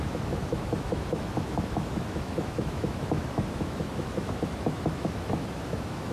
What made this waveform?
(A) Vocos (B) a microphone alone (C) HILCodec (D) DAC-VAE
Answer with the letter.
D